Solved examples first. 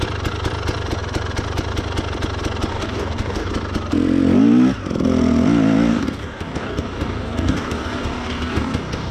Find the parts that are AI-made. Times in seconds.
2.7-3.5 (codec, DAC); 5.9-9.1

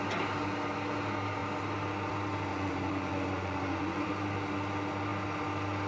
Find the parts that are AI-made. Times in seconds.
2.5-4.1 (vocoder, Vocos)

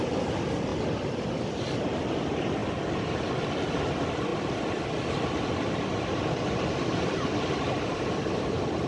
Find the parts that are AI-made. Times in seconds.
0.0-0.7 (vocoder, BigVGAN v2); 1.3-2.6; 3.8-8.9

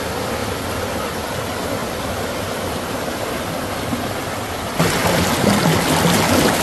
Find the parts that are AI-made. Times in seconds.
0.4-1.0 (vocoder, BigVGAN v2); 1.8-3.4

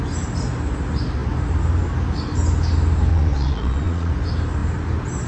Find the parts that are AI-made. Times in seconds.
3.1-4.1 (vocoder, Vocos)

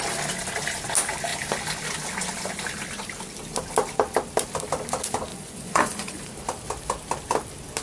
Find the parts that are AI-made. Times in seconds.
5.3-6.3 (vocoder, Vocos)

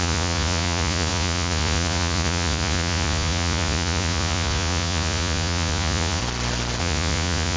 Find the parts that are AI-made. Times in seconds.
0.0-6.2 (vocoder, Vocos); 6.8-7.6

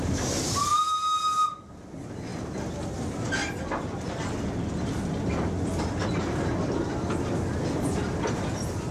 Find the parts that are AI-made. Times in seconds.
none